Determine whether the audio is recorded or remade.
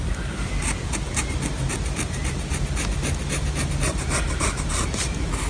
recorded